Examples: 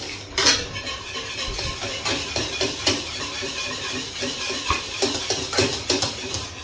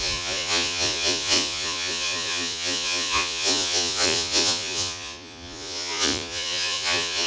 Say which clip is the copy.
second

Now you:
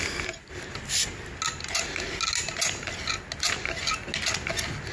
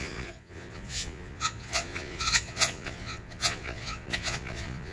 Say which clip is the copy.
second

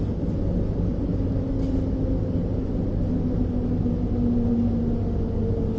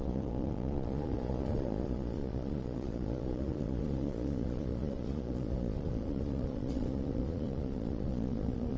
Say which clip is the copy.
second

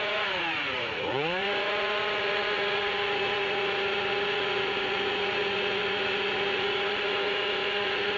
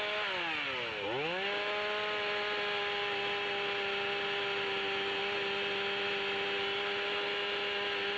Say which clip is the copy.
first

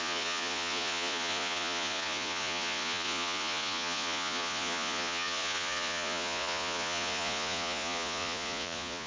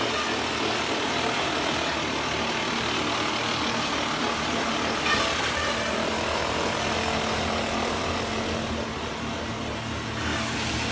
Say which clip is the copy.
first